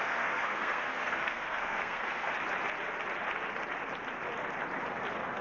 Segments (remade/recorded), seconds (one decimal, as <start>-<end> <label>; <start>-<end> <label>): 0.0-2.3 remade; 2.3-5.4 recorded